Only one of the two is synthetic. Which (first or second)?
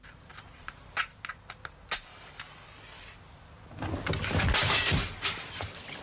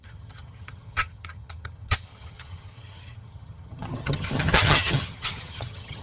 second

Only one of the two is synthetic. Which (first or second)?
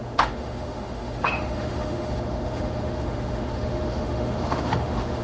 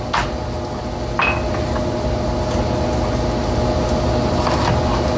first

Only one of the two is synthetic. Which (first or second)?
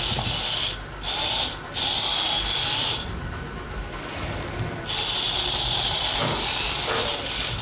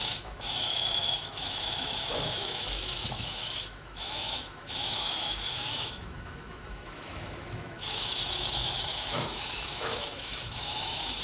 second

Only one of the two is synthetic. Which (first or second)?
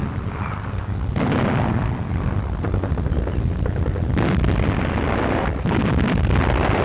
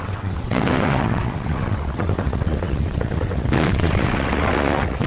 second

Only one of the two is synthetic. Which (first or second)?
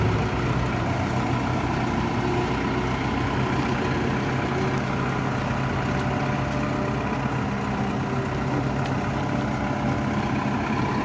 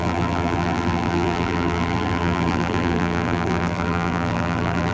second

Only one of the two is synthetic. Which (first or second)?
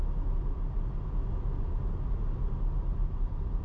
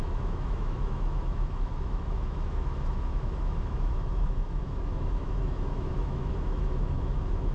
second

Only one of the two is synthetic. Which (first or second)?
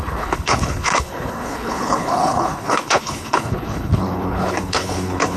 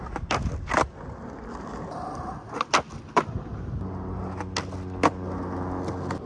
first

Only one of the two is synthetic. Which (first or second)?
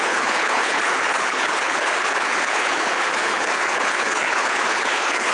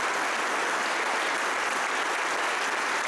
first